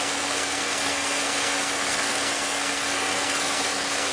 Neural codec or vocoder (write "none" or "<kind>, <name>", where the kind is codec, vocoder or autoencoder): codec, SNAC